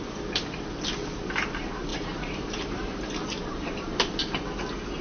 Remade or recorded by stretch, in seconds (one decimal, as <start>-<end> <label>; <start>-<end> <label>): 0.0-1.9 recorded; 1.9-4.2 remade; 4.2-5.0 recorded